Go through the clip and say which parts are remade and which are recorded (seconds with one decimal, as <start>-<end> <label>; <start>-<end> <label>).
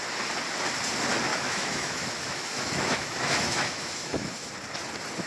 0.0-1.3 recorded; 1.3-4.5 remade; 4.5-5.3 recorded